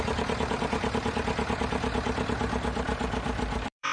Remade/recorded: remade